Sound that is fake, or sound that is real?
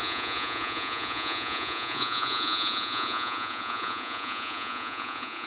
fake